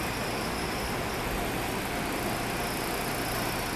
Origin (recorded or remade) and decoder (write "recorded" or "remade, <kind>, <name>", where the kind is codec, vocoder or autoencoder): recorded